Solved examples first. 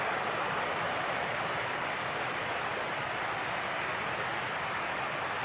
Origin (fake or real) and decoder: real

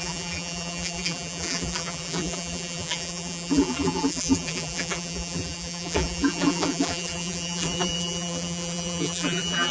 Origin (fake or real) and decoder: fake, vocoder, BigVGAN v2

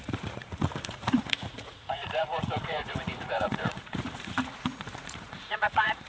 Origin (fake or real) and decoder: fake, vocoder, Vocos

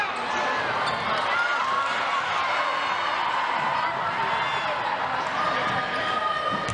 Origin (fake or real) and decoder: real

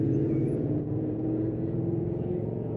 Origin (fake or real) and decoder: fake, vocoder, Vocos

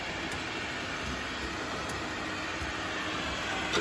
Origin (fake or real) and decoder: real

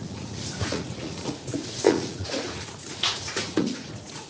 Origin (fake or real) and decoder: fake, vocoder, Vocos